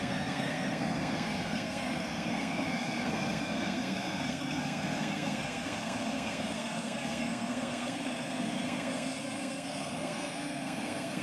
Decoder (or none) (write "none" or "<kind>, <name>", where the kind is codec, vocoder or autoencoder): codec, SNAC